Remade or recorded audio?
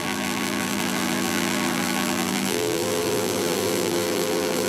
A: remade